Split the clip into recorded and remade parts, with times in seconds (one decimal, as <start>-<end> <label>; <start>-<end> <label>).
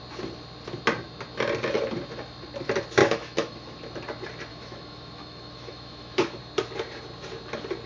0.0-3.0 recorded; 3.0-3.8 remade; 3.8-4.5 recorded; 4.5-6.4 remade; 6.4-7.9 recorded